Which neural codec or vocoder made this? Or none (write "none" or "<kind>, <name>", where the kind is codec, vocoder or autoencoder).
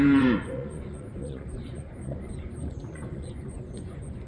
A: vocoder, Vocos